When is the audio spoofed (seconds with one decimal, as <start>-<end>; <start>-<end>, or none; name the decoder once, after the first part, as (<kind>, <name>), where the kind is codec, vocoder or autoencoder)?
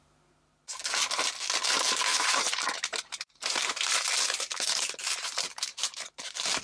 2.1-6.1 (vocoder, BigVGAN v2)